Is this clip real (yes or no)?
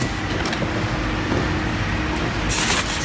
yes